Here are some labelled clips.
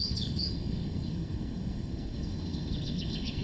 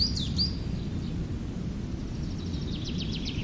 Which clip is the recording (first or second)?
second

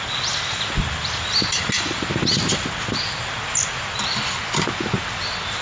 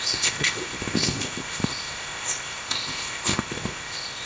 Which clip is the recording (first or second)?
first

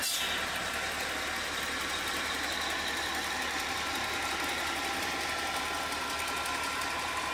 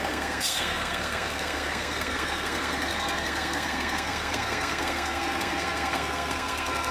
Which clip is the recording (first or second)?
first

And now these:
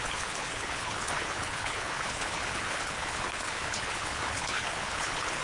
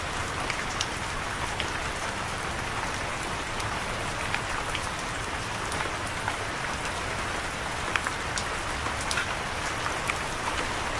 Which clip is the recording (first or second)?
second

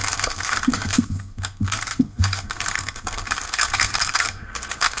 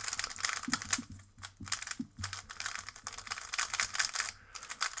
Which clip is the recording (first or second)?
second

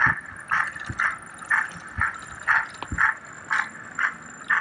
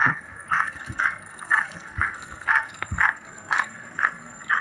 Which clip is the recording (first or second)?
first